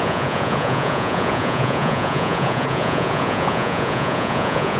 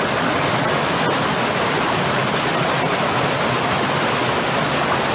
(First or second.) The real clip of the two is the second